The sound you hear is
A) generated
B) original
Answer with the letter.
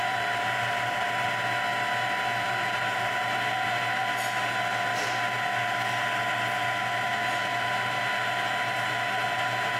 B